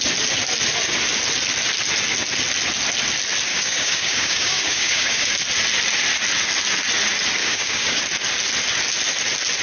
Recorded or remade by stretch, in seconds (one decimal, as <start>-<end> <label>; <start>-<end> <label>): 0.0-3.5 recorded; 3.5-5.3 remade; 5.3-7.4 recorded; 7.4-8.0 remade; 8.0-9.6 recorded